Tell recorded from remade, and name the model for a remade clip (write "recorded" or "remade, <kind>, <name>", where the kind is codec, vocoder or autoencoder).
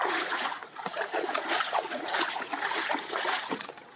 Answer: remade, vocoder, Vocos